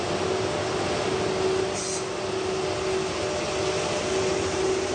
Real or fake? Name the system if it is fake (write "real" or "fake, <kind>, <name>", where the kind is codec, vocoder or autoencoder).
real